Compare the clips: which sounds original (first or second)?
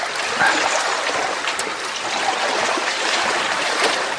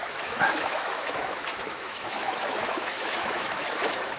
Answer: first